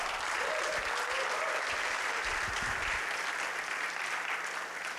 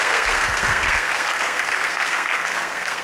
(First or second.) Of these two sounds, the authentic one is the first